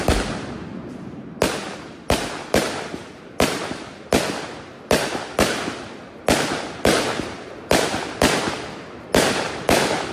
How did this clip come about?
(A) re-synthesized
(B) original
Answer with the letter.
B